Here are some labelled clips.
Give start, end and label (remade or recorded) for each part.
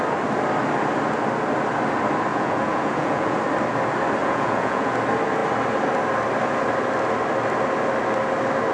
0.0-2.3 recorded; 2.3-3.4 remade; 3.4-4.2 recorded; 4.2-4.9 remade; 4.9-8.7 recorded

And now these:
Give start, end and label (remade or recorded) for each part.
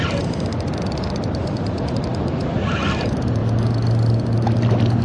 0.0-5.0 recorded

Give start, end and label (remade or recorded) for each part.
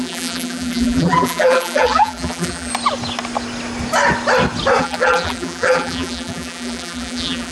0.0-2.7 remade; 2.7-4.8 recorded; 4.8-7.5 remade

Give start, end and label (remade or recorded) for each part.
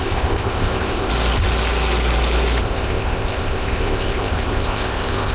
0.0-1.1 remade; 1.1-2.6 recorded; 2.6-5.3 remade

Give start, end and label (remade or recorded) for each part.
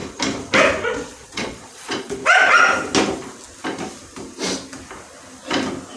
0.0-0.8 recorded; 0.8-2.2 remade; 2.2-6.0 recorded